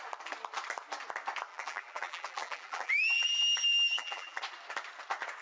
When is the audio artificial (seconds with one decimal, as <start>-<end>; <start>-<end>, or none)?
1.5-3.3; 3.7-4.4